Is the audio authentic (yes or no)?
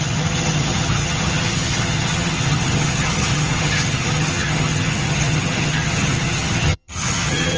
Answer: no